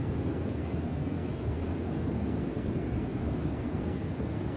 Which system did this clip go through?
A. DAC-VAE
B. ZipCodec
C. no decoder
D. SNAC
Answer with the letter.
D